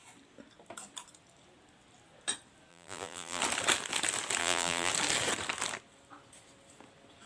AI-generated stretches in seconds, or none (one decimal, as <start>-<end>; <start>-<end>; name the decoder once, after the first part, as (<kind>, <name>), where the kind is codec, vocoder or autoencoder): 2.7-3.4 (vocoder, BigVGAN v2); 4.4-4.9